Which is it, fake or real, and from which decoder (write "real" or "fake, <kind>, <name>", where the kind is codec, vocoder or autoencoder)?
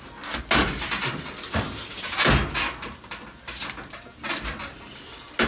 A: real